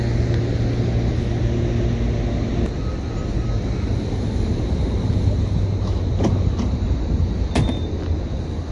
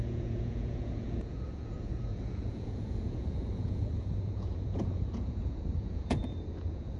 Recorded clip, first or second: first